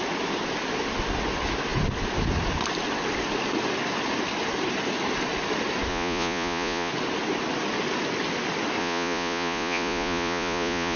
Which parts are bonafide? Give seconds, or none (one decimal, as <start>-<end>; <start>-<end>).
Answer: 0.0-5.9; 6.9-8.8